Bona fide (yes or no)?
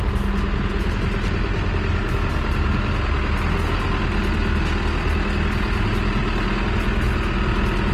yes